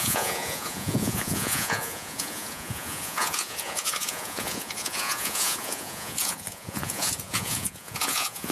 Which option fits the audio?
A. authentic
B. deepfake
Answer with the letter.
B